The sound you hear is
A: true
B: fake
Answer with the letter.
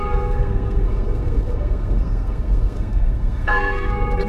B